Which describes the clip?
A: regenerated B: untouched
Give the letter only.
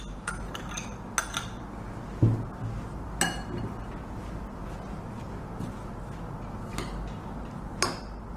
B